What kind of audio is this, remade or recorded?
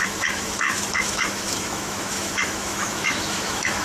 remade